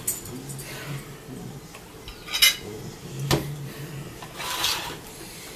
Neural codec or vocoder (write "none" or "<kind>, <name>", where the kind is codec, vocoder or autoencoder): none